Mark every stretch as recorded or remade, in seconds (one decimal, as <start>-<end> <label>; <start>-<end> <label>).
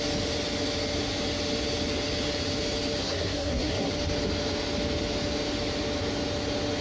0.0-3.0 recorded; 3.0-3.9 remade; 3.9-6.8 recorded